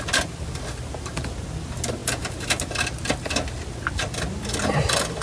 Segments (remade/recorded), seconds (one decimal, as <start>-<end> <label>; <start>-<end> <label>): 0.0-5.2 recorded